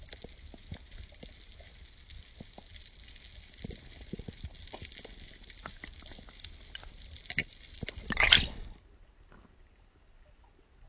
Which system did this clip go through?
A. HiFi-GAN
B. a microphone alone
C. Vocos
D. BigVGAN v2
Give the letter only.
B